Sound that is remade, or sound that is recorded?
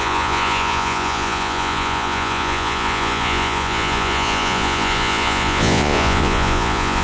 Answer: remade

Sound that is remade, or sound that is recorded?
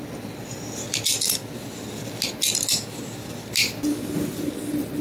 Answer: recorded